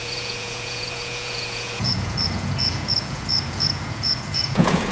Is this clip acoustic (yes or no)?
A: no